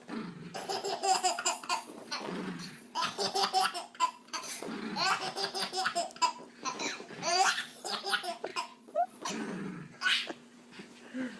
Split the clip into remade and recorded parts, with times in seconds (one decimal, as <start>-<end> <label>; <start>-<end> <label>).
0.0-1.0 recorded; 1.0-3.3 remade; 3.3-4.0 recorded; 4.0-4.7 remade; 4.7-7.3 recorded; 7.3-8.1 remade; 8.1-8.5 recorded; 8.5-9.3 remade; 9.3-11.4 recorded

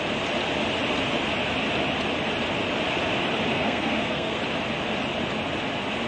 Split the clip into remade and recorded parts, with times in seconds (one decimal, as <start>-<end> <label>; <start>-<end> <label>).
0.0-3.5 recorded; 3.5-4.4 remade; 4.4-6.1 recorded

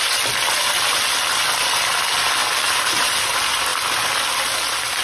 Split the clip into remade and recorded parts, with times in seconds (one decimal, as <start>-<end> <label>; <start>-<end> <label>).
0.0-2.4 recorded; 2.4-3.1 remade; 3.1-5.0 recorded

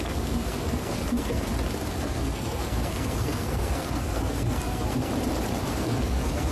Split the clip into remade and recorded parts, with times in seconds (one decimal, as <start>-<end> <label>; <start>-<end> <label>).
0.0-1.5 remade; 1.5-2.0 recorded; 2.0-5.1 remade; 5.1-5.7 recorded; 5.7-6.5 remade

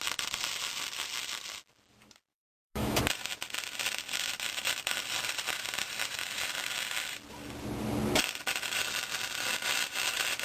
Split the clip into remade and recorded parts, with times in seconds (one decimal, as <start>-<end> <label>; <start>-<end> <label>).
0.0-2.3 recorded; 2.3-3.0 remade; 3.0-10.4 recorded